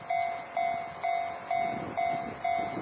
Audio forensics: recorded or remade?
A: recorded